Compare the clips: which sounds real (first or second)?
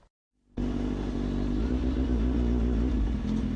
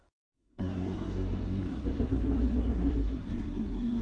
first